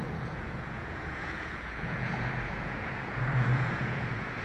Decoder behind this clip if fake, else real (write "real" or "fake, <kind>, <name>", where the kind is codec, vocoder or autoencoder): fake, vocoder, Vocos